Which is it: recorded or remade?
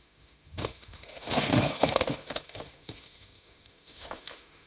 remade